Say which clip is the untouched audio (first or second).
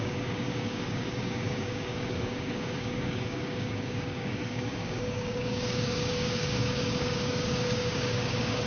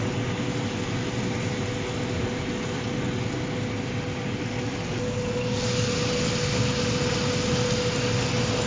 second